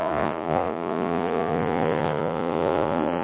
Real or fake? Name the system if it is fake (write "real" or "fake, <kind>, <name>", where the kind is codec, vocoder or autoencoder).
fake, vocoder, Vocos